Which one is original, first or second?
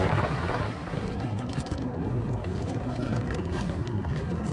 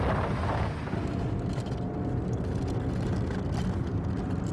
second